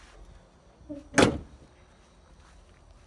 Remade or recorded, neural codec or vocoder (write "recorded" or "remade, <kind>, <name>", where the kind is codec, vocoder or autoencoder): recorded